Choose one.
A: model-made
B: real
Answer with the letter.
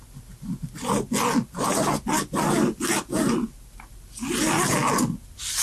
B